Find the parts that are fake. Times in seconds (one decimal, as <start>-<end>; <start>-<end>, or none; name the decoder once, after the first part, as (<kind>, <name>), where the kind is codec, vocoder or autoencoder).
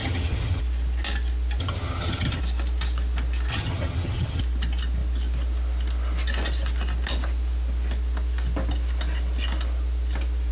0.0-0.6 (vocoder, HiFi-GAN); 1.6-2.4; 3.5-4.4